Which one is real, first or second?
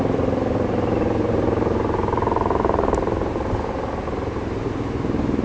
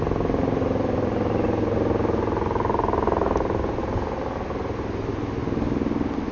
second